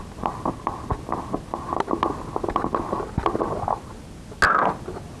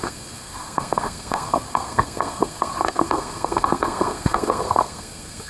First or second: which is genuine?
first